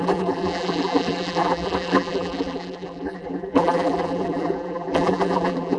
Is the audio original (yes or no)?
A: no